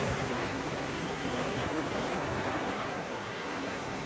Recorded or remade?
remade